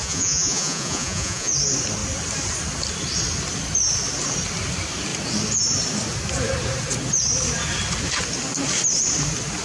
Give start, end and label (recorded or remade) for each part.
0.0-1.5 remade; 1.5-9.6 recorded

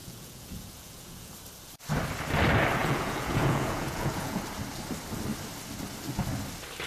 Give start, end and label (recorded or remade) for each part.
0.0-1.3 remade; 1.3-2.8 recorded; 2.8-4.4 remade; 4.4-6.9 recorded